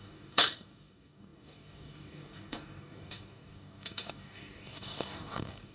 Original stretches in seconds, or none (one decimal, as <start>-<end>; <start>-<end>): none